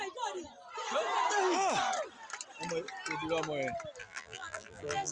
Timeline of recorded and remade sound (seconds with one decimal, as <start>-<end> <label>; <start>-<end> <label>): 0.0-4.0 recorded; 4.0-5.1 remade